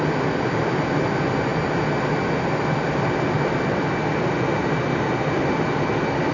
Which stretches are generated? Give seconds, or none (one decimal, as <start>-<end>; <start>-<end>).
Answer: none